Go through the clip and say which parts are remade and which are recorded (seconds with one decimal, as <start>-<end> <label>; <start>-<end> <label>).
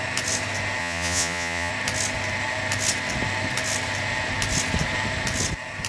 0.0-0.8 recorded; 0.8-1.7 remade; 1.7-5.9 recorded